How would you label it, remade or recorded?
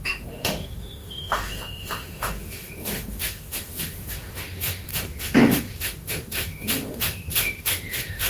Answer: remade